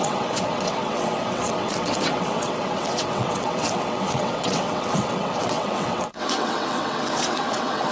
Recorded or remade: remade